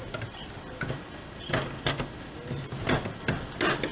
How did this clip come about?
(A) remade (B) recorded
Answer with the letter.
B